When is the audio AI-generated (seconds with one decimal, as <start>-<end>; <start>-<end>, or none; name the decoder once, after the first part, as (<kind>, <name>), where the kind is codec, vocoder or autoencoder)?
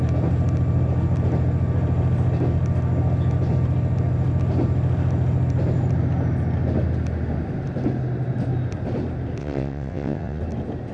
9.4-10.4 (vocoder, WaveNeXt)